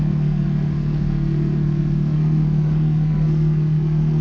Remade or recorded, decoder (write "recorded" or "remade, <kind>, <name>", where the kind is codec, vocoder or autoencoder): remade, codec, SNAC